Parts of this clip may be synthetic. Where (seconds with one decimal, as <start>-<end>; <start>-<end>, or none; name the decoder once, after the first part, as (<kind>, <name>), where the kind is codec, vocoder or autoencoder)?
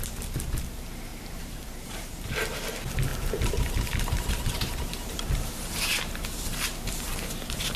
1.1-2.1 (vocoder, BigVGAN v2); 3.1-7.8